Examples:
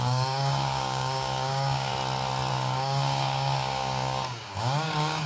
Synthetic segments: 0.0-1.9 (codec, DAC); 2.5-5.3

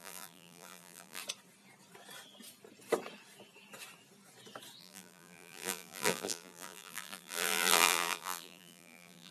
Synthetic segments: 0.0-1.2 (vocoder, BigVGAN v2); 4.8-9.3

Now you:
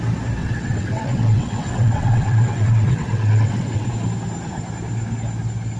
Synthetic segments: 0.4-3.9 (vocoder, WaveNeXt)

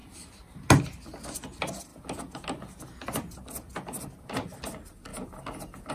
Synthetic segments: none

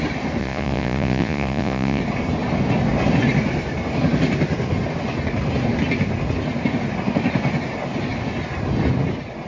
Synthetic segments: 0.4-2.0 (vocoder, Vocos)